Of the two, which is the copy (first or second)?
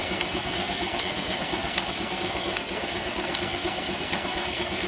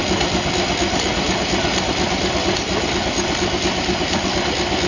first